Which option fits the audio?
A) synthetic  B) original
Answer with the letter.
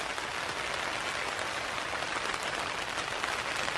B